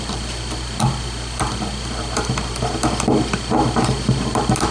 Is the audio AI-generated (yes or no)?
no